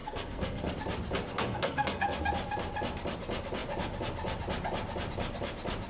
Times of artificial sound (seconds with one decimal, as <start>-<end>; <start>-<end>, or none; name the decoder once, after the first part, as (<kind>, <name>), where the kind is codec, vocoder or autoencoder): 0.0-0.7 (codec, SNAC); 1.3-2.2